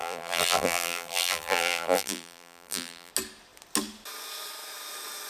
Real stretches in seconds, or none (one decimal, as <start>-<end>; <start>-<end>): 3.1-5.3